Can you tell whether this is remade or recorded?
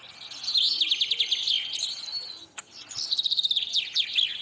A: recorded